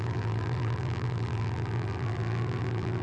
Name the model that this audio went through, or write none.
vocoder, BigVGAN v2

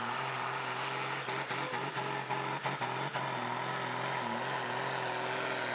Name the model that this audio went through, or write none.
none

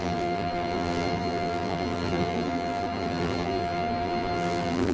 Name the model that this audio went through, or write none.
vocoder, BigVGAN v2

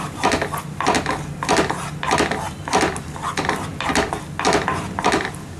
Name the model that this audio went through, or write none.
none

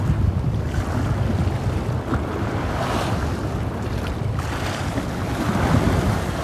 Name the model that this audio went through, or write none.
none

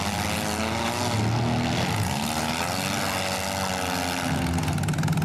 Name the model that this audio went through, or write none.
none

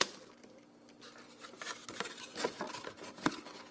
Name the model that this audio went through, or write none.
none